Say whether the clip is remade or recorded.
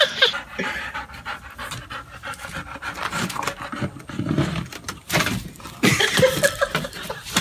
remade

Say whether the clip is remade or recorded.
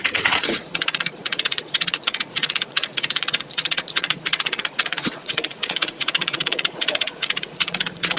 remade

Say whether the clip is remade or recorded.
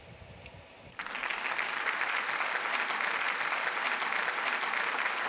recorded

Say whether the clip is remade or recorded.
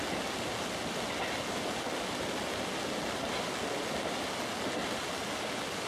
recorded